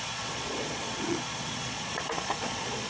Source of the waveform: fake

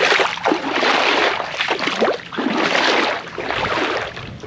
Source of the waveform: real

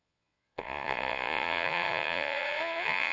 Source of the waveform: fake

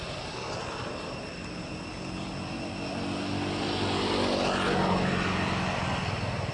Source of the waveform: real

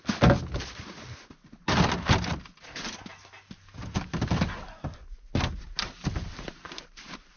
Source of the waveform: real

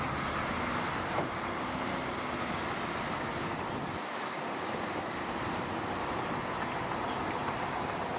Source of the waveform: real